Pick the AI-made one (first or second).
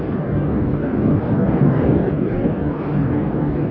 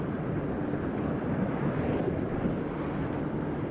first